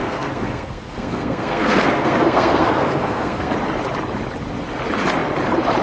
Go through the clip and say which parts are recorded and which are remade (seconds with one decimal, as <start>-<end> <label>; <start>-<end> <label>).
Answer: 0.0-3.5 remade; 3.5-5.8 recorded